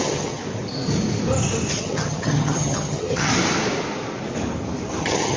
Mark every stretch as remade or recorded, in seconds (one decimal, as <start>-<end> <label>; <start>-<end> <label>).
0.0-0.4 remade; 0.4-1.7 recorded; 1.7-3.3 remade; 3.3-5.0 recorded; 5.0-5.4 remade